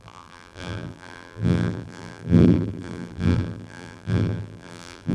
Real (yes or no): no